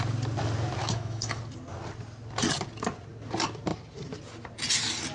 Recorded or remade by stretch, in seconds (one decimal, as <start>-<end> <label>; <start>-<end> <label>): 0.0-0.8 recorded; 0.8-1.4 remade; 1.4-5.1 recorded